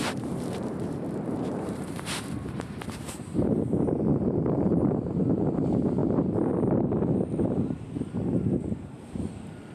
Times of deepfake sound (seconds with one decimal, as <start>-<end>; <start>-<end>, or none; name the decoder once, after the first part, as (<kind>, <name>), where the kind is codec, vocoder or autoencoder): 0.0-4.1 (vocoder, BigVGAN v2); 4.6-6.0; 7.3-9.7